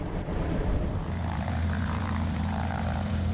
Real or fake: fake